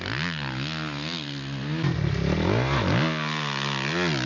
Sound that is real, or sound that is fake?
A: real